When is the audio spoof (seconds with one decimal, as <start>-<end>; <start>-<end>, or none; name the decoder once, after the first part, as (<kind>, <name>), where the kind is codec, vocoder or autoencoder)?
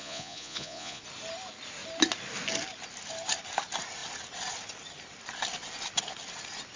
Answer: 0.0-1.0 (vocoder, Vocos)